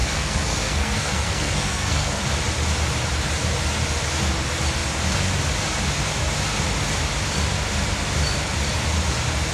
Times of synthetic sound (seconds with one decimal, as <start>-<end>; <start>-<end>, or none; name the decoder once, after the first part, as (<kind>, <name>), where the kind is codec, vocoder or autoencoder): 0.0-2.2 (codec, SNAC)